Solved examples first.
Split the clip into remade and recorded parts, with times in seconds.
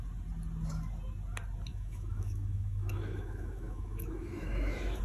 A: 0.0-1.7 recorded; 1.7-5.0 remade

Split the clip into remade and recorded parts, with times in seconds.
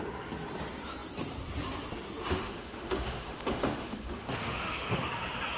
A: 0.0-2.2 recorded; 2.2-5.1 remade; 5.1-5.6 recorded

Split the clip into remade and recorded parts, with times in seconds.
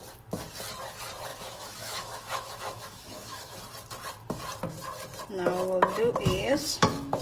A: 0.0-1.3 recorded; 1.3-3.5 remade; 3.5-6.4 recorded; 6.4-7.2 remade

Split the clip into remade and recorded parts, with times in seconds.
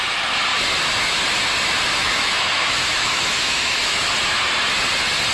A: 0.0-2.0 recorded; 2.0-4.1 remade; 4.1-5.3 recorded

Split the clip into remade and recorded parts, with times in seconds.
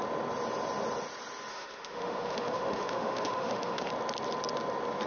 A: 0.0-1.5 recorded; 1.5-3.9 remade; 3.9-5.1 recorded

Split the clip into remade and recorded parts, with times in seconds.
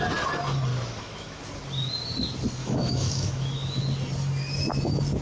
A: 0.0-0.7 recorded; 0.7-1.4 remade; 1.4-2.6 recorded; 2.6-3.8 remade; 3.8-5.2 recorded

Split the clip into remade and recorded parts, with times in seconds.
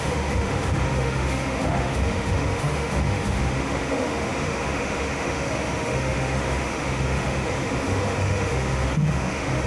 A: 0.0-9.7 remade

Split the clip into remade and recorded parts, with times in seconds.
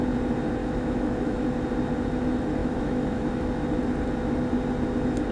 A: 0.0-0.6 recorded; 0.6-1.4 remade; 1.4-2.6 recorded; 2.6-3.4 remade; 3.4-5.3 recorded